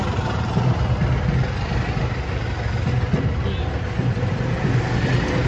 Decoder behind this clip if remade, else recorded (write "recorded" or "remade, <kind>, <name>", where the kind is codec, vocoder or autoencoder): recorded